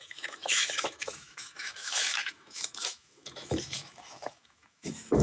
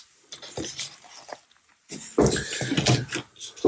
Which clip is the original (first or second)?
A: second